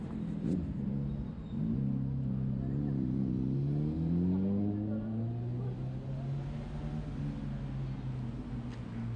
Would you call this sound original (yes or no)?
yes